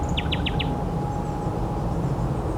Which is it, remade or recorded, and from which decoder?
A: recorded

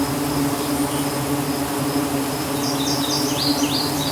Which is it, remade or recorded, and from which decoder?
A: recorded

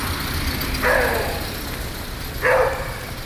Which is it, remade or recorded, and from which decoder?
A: recorded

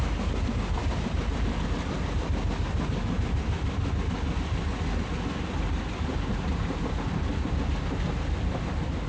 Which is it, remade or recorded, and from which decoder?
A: recorded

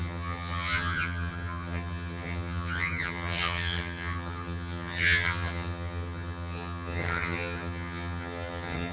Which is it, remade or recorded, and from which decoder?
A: remade, vocoder, HiFi-GAN